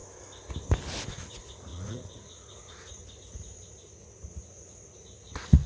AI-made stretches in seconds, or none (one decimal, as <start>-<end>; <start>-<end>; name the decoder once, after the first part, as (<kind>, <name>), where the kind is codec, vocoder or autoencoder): 1.1-5.7 (vocoder, Vocos)